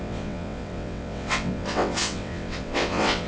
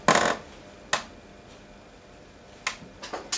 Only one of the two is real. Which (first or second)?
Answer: second